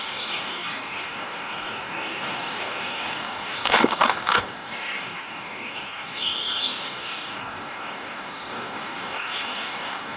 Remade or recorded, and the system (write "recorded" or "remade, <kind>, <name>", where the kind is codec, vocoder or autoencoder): remade, codec, DAC